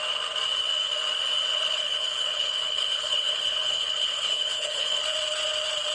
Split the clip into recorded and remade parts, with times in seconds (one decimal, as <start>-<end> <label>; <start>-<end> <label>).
0.0-1.5 recorded; 1.5-5.0 remade; 5.0-5.9 recorded